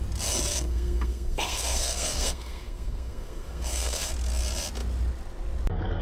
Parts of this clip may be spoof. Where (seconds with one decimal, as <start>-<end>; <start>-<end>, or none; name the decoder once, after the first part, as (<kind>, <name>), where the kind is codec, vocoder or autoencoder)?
0.5-4.1 (codec, SNAC)